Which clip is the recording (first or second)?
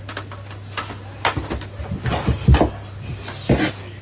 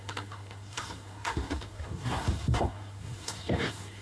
first